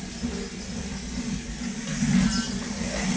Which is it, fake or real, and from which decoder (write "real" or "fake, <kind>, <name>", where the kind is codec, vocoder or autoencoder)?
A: real